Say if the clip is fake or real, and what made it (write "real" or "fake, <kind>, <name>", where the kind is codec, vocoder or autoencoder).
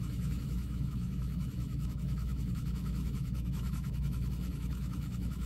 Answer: fake, autoencoder, DAC-VAE